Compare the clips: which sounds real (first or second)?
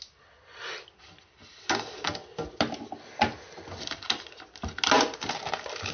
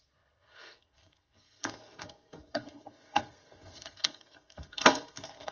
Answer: first